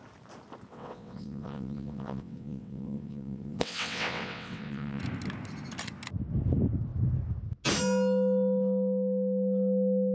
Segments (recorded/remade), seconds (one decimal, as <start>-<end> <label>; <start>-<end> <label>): 0.0-0.7 recorded; 0.7-5.0 remade; 5.0-10.1 recorded